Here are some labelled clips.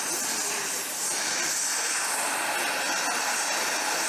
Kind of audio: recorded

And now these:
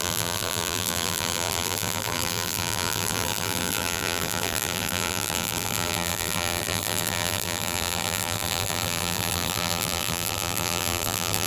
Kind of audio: remade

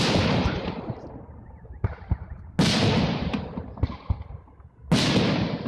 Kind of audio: recorded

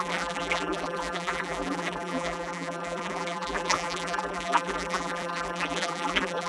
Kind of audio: remade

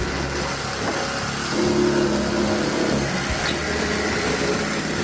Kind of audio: recorded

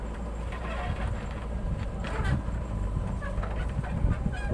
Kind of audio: remade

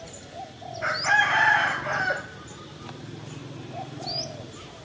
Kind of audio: recorded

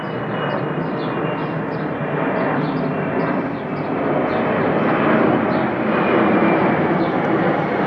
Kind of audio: remade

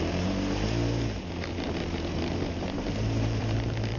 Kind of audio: remade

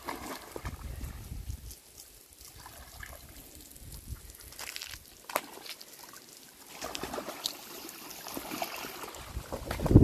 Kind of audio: recorded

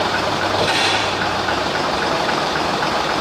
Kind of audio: remade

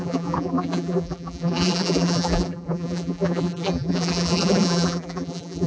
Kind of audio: remade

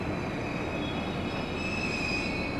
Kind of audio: recorded